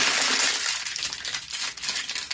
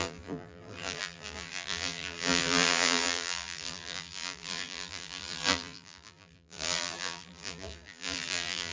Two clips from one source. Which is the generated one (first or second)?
second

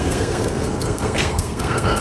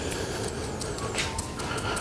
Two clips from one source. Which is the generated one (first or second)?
first